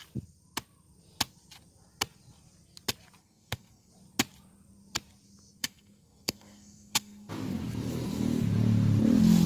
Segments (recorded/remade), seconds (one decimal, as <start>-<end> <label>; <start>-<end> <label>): 0.0-3.2 recorded; 3.2-3.9 remade; 3.9-5.6 recorded; 5.6-7.3 remade; 7.3-9.5 recorded